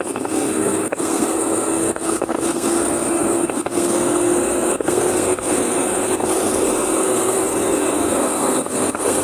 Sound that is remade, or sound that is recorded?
remade